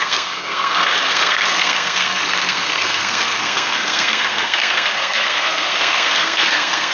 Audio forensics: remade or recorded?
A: remade